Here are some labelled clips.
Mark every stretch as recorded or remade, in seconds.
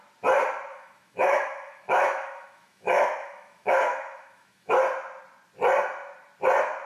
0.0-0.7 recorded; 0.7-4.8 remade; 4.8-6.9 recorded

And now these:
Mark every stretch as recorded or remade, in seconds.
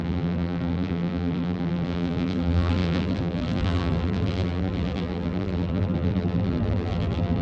0.0-7.4 remade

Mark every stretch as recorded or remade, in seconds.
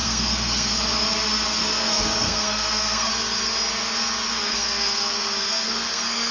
0.0-0.8 remade; 0.8-1.6 recorded; 1.6-3.1 remade; 3.1-4.3 recorded; 4.3-6.3 remade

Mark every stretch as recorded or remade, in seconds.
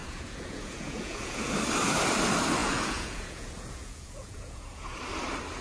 0.0-1.5 remade; 1.5-2.6 recorded; 2.6-5.0 remade; 5.0-5.6 recorded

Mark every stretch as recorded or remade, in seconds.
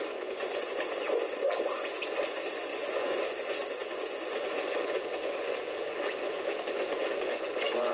0.0-7.9 remade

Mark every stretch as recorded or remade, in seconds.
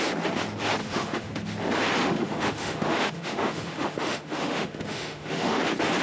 0.0-0.8 recorded; 0.8-1.3 remade; 1.3-2.0 recorded; 2.0-5.6 remade; 5.6-6.0 recorded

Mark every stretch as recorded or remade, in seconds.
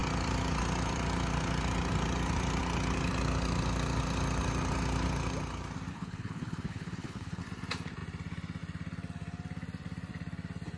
0.0-5.9 recorded; 5.9-7.4 remade; 7.4-10.8 recorded